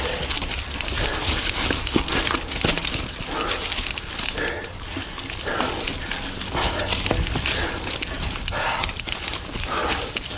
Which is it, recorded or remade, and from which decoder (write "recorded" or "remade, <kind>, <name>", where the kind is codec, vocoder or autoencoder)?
recorded